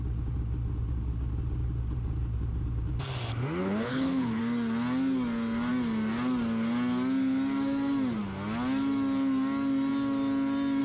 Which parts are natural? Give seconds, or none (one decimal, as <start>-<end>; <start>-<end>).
0.0-3.6; 4.4-10.8